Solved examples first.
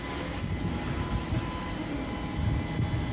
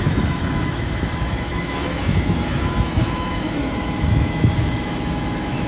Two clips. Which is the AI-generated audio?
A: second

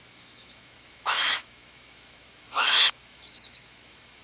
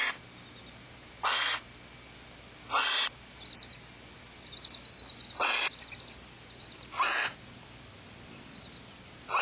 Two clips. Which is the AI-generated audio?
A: first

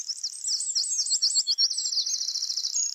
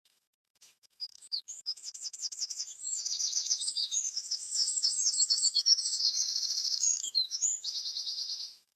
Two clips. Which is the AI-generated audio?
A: second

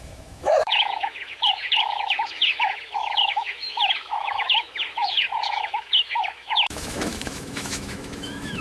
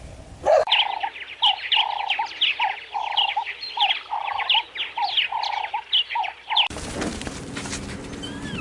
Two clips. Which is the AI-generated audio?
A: first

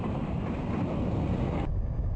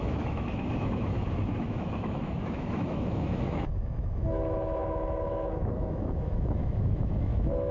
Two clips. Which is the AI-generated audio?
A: second